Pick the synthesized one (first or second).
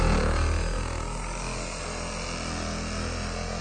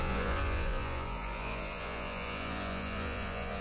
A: second